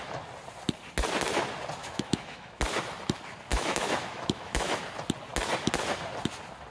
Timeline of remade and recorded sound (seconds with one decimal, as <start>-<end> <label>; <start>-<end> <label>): 0.0-1.8 recorded; 1.8-2.6 remade; 2.6-3.5 recorded; 3.5-4.8 remade; 4.8-6.7 recorded